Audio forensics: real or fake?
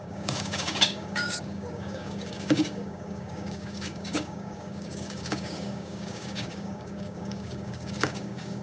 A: fake